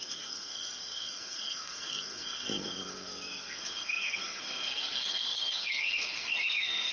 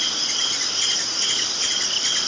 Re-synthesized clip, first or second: first